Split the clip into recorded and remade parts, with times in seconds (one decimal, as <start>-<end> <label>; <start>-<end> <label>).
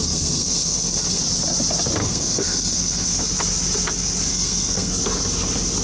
0.0-1.2 remade; 1.2-2.0 recorded; 2.0-3.2 remade; 3.2-4.3 recorded; 4.3-4.9 remade; 4.9-5.8 recorded